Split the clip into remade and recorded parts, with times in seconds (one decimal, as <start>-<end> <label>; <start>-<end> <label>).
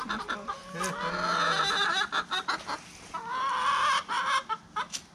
0.0-5.1 recorded